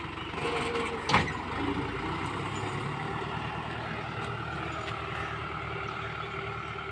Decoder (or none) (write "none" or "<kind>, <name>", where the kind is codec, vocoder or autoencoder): none